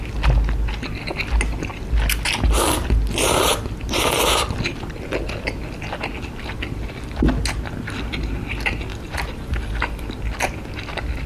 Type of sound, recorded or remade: recorded